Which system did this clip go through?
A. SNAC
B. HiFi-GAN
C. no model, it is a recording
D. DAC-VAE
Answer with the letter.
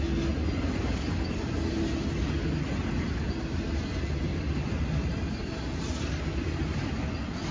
C